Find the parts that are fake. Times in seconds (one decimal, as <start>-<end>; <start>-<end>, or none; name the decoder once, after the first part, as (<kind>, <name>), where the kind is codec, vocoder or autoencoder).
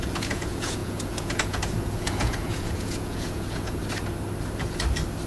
0.0-3.8 (vocoder, Vocos)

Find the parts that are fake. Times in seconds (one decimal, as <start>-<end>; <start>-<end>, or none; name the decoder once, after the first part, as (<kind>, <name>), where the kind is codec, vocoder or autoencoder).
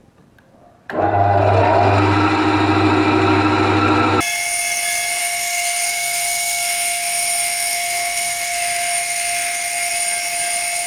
5.2-9.9 (codec, SNAC)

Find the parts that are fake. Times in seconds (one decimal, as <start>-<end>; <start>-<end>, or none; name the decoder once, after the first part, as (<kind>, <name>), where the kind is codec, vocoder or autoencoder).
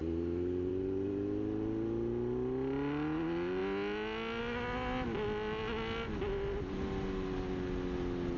none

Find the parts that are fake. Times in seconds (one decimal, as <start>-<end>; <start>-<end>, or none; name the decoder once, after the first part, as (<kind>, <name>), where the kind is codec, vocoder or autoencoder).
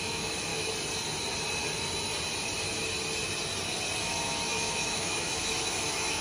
0.0-0.5 (autoencoder, DAC-VAE); 4.0-6.2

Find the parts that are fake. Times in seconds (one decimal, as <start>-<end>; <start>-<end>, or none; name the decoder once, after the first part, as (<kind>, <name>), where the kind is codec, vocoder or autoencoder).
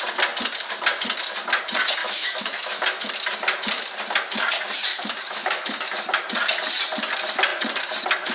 2.0-3.1 (autoencoder, DAC-VAE); 4.9-5.9